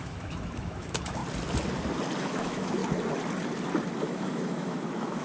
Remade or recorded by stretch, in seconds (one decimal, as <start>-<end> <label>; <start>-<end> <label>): 0.0-1.2 remade; 1.2-2.2 recorded; 2.2-2.8 remade; 2.8-4.0 recorded; 4.0-5.2 remade